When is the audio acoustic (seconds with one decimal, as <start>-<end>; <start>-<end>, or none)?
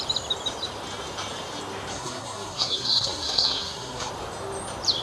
0.0-1.9; 4.1-5.0